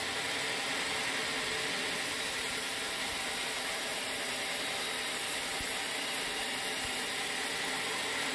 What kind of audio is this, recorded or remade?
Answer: recorded